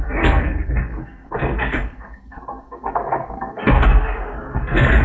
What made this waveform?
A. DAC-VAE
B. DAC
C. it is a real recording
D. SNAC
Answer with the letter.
D